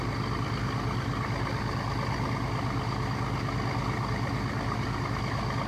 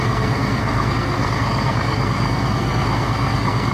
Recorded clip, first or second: first